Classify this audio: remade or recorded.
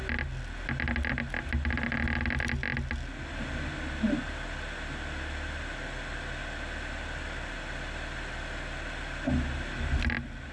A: recorded